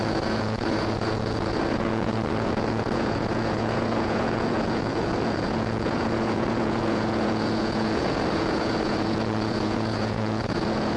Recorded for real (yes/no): no